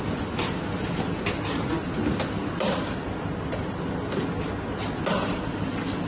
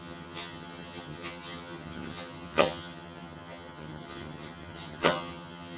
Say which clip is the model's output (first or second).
second